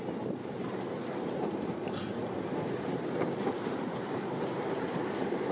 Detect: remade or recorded remade